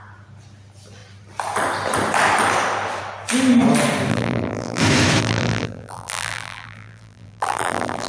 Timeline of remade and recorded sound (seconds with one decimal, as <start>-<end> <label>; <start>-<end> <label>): 0.0-4.1 recorded; 4.1-4.8 remade; 4.8-5.2 recorded; 5.2-8.1 remade